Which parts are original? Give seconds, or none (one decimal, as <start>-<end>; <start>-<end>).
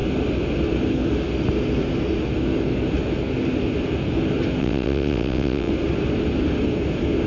0.0-4.6; 5.7-7.3